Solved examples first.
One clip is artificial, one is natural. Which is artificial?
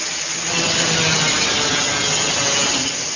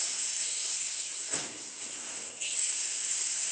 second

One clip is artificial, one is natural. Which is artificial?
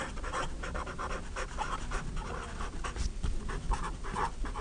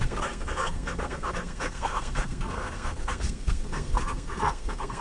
second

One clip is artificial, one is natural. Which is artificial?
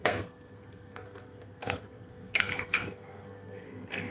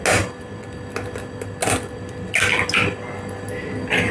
first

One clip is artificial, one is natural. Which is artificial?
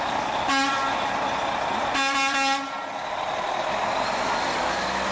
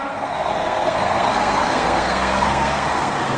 second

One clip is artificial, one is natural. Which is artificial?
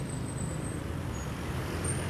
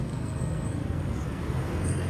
second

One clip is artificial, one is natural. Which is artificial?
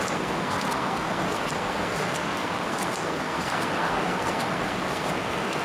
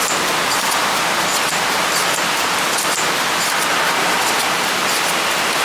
first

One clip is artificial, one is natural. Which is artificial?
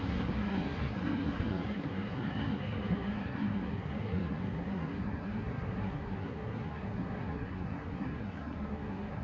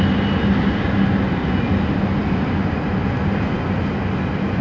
first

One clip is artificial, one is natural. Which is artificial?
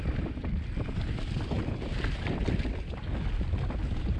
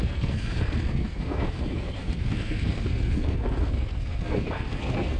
second